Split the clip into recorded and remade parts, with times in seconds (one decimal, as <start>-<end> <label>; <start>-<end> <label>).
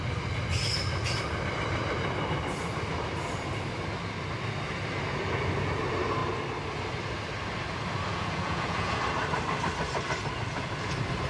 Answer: 0.0-8.1 recorded; 8.1-9.0 remade; 9.0-11.3 recorded